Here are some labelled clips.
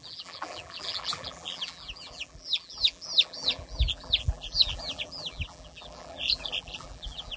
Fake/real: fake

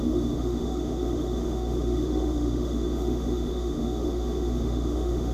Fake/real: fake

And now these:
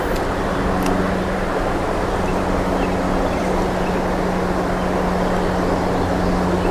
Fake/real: real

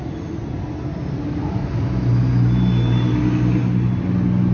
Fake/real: real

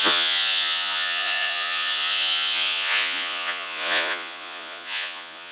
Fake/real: fake